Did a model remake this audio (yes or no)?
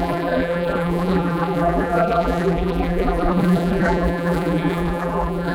yes